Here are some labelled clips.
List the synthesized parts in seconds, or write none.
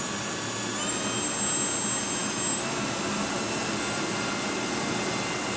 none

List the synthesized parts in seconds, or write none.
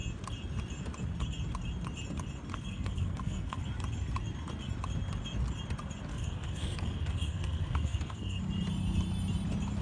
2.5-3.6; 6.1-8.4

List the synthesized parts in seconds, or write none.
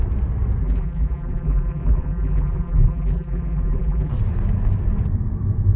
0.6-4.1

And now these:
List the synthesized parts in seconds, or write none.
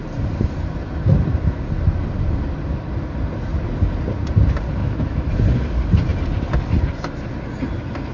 4.8-5.3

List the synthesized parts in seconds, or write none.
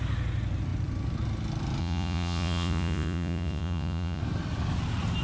1.8-4.2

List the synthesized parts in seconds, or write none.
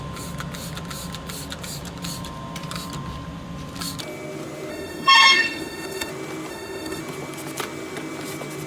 4.7-6.1; 6.5-7.0